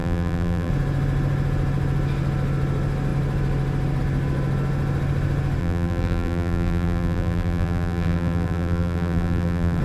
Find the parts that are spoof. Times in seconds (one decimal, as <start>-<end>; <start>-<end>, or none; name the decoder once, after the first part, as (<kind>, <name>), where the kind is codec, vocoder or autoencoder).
0.0-0.7 (vocoder, BigVGAN v2); 5.6-9.8